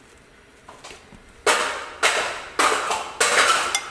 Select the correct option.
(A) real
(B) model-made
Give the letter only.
A